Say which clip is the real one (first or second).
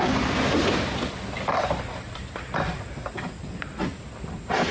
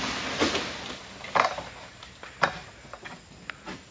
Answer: second